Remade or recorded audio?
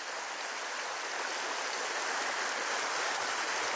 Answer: recorded